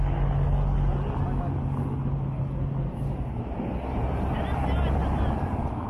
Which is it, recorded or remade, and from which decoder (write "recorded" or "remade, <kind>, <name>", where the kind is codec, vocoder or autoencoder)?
recorded